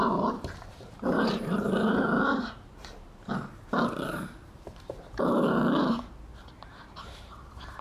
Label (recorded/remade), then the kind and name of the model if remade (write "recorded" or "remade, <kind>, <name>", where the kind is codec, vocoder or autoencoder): remade, vocoder, BigVGAN v2